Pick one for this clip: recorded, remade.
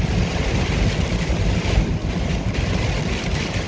recorded